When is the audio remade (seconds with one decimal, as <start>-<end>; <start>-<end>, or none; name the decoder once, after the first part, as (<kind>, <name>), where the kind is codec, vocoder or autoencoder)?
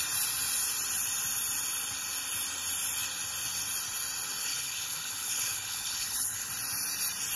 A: 4.4-6.5 (codec, HILCodec)